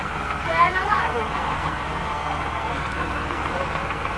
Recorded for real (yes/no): no